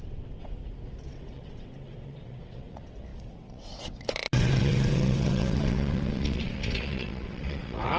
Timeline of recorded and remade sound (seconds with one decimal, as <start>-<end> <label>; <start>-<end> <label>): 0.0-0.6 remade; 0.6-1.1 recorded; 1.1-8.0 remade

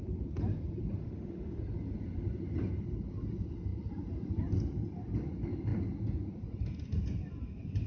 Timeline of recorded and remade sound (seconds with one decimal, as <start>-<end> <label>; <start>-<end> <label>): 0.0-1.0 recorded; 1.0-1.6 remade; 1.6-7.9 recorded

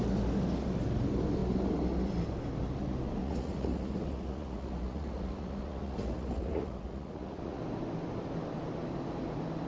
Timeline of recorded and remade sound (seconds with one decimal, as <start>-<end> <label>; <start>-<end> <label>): 0.0-3.2 recorded; 3.2-7.6 remade; 7.6-9.7 recorded

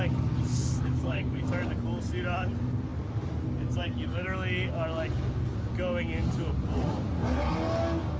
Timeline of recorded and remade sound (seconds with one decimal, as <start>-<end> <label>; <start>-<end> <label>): 0.0-0.5 recorded; 0.5-1.4 remade; 1.4-8.2 recorded

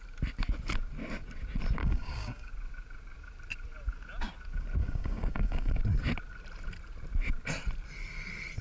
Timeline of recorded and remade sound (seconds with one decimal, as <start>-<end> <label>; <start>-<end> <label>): 0.0-1.8 recorded; 1.8-2.5 remade; 2.5-4.8 recorded; 4.8-5.8 remade; 5.8-8.6 recorded

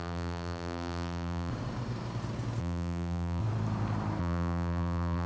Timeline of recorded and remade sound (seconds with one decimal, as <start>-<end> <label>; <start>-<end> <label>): 0.0-1.5 remade; 1.5-2.6 recorded; 2.6-3.4 remade; 3.4-4.2 recorded; 4.2-5.3 remade

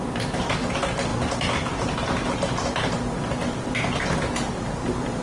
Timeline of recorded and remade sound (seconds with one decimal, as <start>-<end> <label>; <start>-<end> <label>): 0.0-5.2 recorded